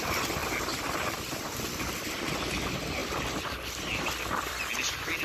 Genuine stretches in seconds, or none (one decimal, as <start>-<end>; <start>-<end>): 0.0-0.4; 1.8-3.0; 4.7-5.2